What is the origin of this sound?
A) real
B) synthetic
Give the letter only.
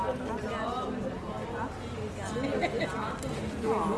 A